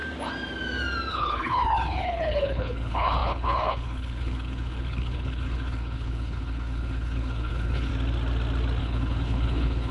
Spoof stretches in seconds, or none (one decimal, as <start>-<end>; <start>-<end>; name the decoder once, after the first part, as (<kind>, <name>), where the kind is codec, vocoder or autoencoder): 1.1-7.9 (codec, HILCodec); 8.8-9.9